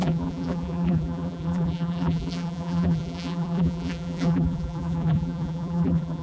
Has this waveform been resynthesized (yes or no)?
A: yes